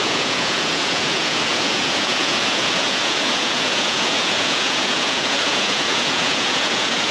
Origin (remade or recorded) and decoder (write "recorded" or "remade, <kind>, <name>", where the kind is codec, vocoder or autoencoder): remade, vocoder, Vocos